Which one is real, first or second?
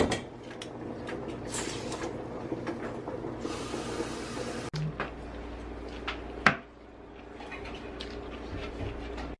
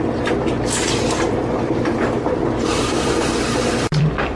first